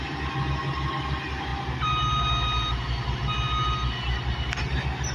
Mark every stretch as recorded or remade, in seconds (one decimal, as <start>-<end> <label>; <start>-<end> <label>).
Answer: 0.0-5.1 recorded